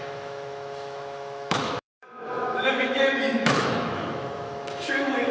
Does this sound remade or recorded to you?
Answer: remade